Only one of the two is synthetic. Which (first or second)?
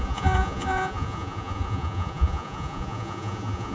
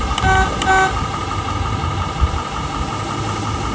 first